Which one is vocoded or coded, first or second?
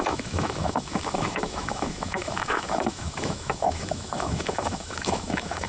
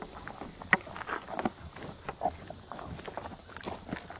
first